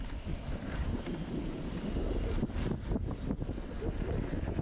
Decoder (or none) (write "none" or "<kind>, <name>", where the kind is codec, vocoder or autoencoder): none